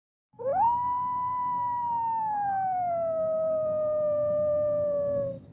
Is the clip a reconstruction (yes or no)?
no